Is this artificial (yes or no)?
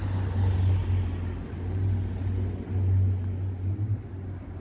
no